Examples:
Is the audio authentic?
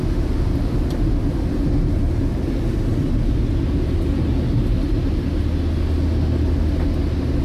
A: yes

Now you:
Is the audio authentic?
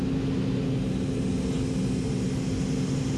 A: yes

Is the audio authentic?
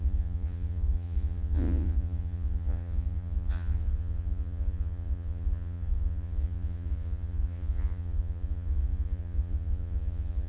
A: no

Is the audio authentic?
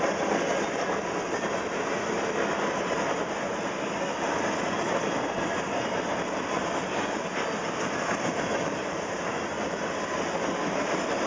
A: yes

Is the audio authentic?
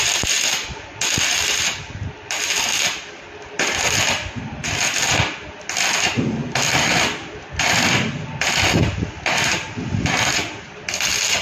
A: yes